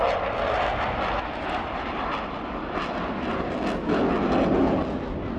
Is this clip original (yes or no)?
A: yes